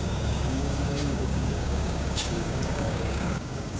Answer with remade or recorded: remade